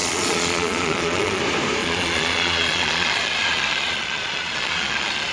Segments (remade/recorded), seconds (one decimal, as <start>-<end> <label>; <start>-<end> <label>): 0.0-1.4 remade; 1.4-1.8 recorded; 1.8-5.3 remade

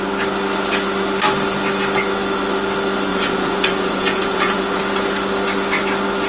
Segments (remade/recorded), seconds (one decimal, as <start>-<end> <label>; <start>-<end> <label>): 0.0-3.1 recorded; 3.1-4.8 remade; 4.8-6.3 recorded

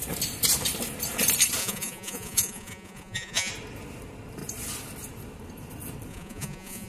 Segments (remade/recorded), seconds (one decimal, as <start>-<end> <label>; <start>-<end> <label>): 0.0-1.6 recorded; 1.6-3.5 remade; 3.5-6.1 recorded; 6.1-6.9 remade